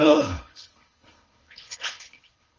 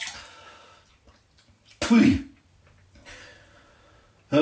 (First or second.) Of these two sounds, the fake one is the first